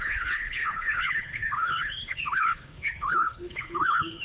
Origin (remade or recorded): remade